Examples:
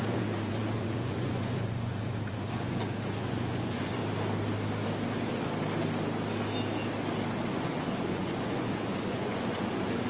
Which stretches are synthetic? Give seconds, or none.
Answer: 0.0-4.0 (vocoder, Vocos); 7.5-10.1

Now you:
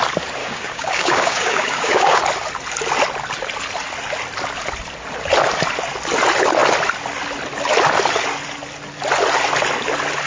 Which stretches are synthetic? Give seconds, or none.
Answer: 0.4-2.2 (codec, DAC)

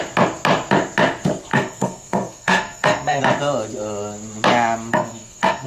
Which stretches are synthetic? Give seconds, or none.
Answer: 1.5-3.2 (codec, SNAC); 4.9-5.7